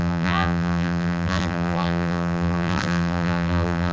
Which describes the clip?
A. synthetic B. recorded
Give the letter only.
A